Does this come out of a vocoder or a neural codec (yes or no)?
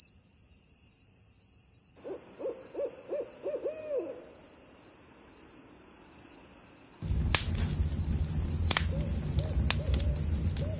no